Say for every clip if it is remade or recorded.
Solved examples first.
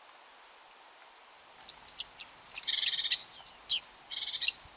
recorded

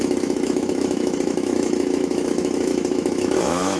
remade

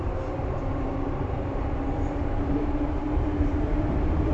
remade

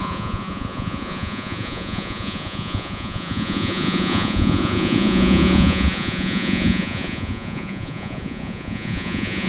remade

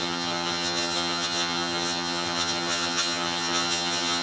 remade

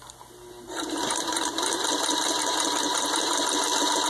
recorded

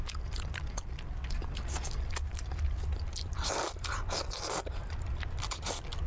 recorded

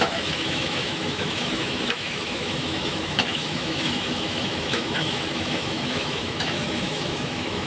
remade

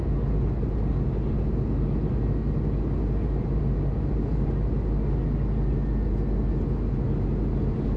recorded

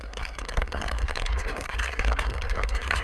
remade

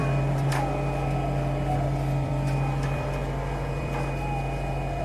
remade